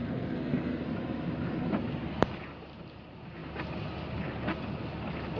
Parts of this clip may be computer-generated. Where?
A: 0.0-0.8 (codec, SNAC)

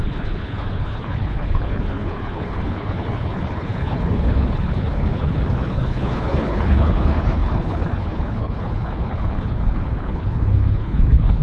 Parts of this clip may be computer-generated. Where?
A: 0.0-11.4 (codec, HILCodec)

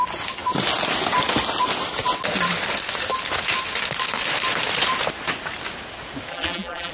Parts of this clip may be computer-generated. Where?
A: 6.3-6.9 (vocoder, BigVGAN v2)

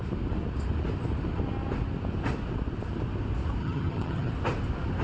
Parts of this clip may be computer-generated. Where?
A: 3.6-4.3 (vocoder, HiFi-GAN)

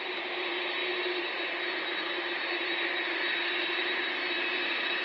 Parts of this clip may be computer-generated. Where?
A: none

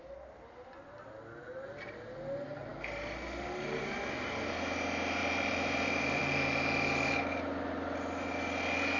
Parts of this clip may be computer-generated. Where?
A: 5.2-6.2 (vocoder, BigVGAN v2)